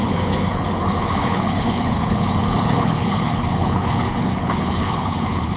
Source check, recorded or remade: remade